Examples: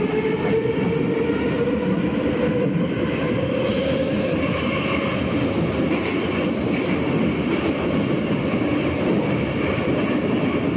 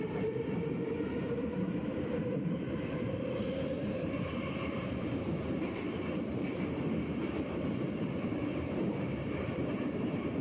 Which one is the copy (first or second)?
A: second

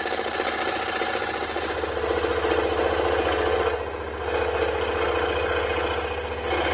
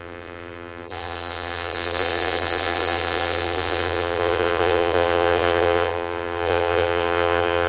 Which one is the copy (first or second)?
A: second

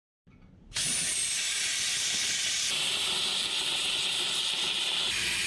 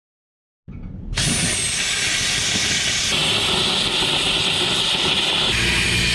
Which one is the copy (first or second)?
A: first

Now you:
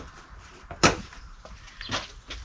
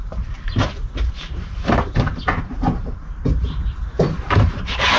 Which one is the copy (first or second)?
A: second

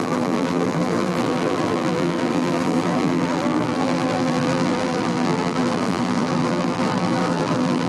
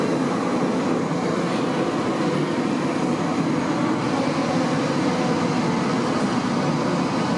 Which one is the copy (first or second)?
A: first